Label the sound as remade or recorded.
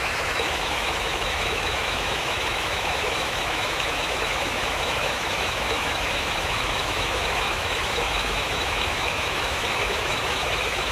remade